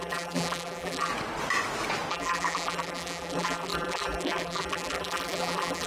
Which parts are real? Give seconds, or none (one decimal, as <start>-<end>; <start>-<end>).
1.1-2.1

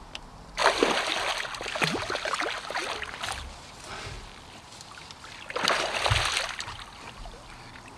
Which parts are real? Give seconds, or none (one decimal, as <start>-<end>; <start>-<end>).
0.0-8.0

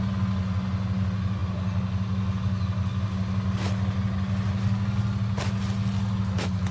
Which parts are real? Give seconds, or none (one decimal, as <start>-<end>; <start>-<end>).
0.0-6.7